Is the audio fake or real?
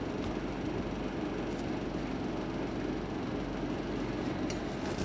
real